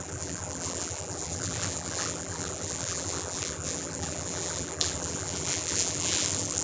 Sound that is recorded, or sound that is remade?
remade